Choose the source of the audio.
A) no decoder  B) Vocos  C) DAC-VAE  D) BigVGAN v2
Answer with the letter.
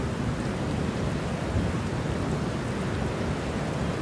A